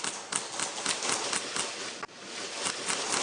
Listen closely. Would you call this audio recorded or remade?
recorded